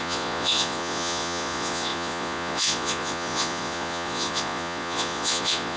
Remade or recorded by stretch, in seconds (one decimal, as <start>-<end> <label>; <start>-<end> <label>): 0.0-5.8 remade